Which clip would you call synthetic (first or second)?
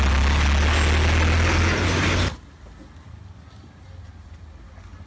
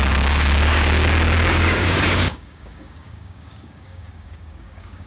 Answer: second